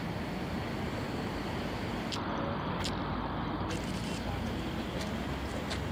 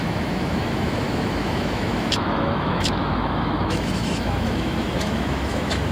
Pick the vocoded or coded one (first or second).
second